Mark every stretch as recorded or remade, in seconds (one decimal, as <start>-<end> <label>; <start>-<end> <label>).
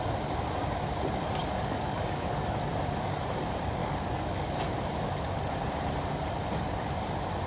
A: 0.0-1.4 recorded; 1.4-2.3 remade; 2.3-3.8 recorded; 3.8-4.6 remade; 4.6-7.5 recorded